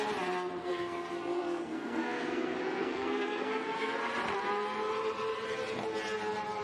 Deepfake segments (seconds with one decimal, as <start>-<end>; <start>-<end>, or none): 0.6-4.0